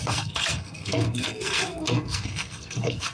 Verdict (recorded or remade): remade